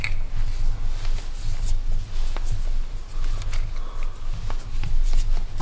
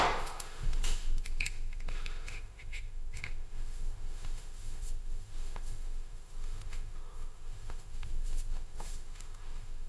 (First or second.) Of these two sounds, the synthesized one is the second